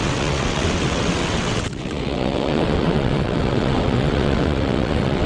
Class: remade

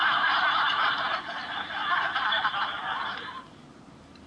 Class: remade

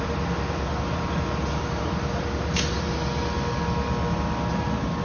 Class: recorded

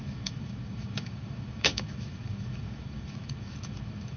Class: remade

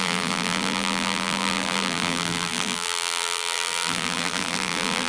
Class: remade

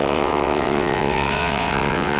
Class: remade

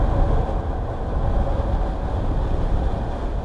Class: recorded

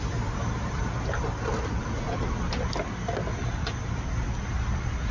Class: recorded